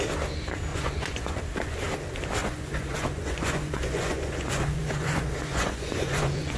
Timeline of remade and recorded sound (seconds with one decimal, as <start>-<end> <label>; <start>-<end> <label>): 0.0-0.7 recorded; 0.7-1.4 remade; 1.4-2.4 recorded; 2.4-6.6 remade